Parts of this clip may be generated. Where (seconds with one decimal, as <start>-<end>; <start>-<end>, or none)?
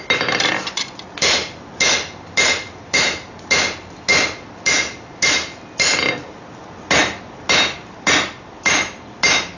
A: none